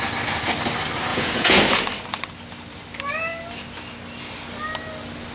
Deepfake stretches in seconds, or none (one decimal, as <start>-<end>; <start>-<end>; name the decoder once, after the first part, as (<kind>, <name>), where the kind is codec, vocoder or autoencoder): 1.1-1.6 (vocoder, Vocos)